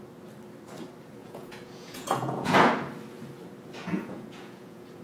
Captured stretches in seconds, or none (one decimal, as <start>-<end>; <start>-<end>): 0.0-1.2; 2.7-3.8